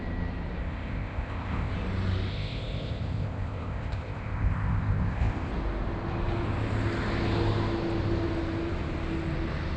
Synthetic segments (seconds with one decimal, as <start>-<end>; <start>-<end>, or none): 0.6-1.7; 2.3-5.5